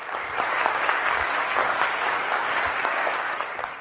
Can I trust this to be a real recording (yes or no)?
no